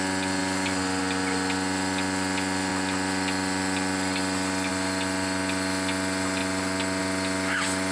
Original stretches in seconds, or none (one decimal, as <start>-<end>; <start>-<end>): 0.0-7.9